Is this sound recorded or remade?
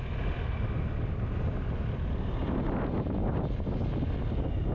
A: recorded